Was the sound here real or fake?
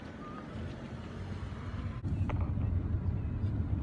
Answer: real